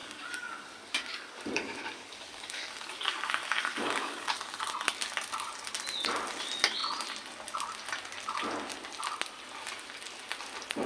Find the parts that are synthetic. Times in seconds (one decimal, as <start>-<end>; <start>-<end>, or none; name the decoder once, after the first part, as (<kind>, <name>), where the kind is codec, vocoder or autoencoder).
0.0-4.6 (codec, DAC)